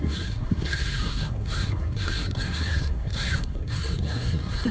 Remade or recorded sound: remade